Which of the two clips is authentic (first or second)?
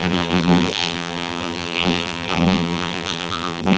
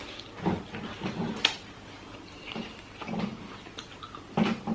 second